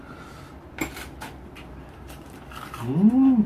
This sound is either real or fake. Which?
fake